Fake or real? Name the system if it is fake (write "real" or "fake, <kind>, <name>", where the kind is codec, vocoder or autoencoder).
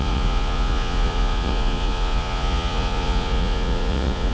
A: fake, vocoder, Vocos